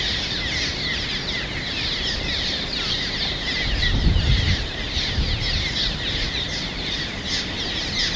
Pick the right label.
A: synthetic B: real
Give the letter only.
A